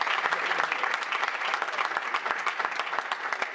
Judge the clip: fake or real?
real